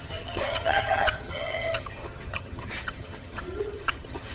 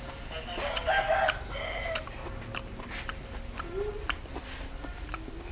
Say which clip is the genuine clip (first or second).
second